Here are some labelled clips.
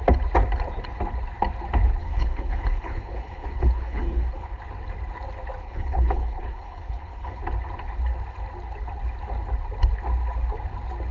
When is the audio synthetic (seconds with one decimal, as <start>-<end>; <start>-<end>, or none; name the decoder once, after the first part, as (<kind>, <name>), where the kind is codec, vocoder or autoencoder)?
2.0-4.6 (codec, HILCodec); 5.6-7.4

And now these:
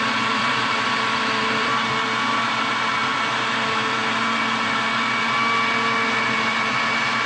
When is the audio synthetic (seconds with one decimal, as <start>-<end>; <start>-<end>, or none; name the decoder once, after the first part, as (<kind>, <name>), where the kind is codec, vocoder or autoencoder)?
0.0-1.7 (vocoder, BigVGAN v2); 2.5-4.0; 6.7-7.3

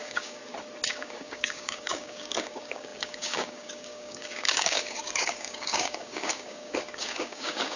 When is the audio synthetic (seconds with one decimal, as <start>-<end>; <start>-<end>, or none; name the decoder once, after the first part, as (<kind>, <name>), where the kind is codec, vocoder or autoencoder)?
0.0-0.4 (codec, DAC); 0.9-7.8

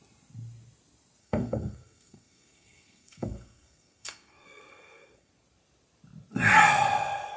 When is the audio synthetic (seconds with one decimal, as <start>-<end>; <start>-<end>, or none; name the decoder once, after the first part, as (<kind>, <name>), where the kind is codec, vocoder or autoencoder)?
1.2-5.3 (codec, SNAC)

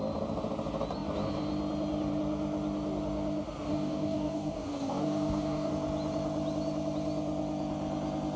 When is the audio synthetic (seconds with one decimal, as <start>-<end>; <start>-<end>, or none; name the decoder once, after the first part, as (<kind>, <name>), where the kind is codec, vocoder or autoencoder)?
3.7-5.7 (codec, DAC)